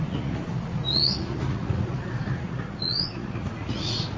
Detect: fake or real fake